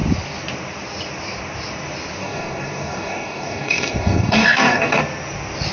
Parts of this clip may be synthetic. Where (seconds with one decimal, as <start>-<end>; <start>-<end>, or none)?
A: 2.2-5.0